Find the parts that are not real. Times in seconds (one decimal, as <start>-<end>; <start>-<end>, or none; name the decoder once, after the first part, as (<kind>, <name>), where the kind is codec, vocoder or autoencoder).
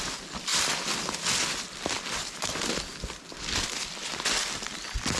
4.1-5.2 (vocoder, BigVGAN v2)